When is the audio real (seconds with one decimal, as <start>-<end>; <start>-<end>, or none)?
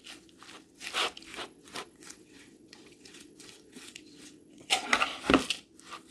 0.0-1.3; 5.0-6.1